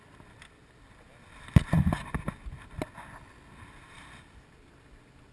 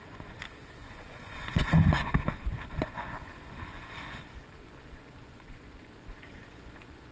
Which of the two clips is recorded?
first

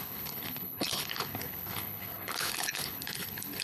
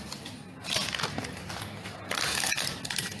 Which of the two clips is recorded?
second